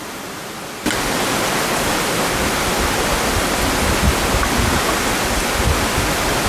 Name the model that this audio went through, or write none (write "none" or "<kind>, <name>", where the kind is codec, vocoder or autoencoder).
none